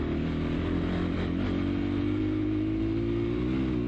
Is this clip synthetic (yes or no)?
no